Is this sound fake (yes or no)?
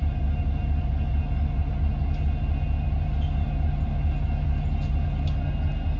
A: no